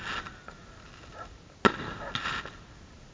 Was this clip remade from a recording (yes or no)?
no